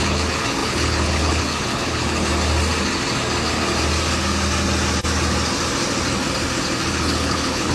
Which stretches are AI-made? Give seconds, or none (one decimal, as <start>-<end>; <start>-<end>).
0.0-2.3; 6.9-7.7